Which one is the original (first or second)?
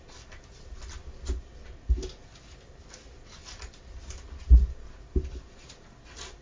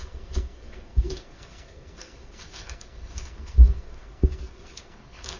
first